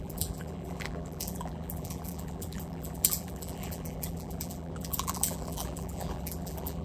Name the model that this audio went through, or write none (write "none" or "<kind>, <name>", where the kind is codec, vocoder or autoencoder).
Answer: vocoder, BigVGAN v2